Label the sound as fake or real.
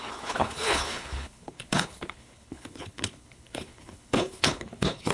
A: fake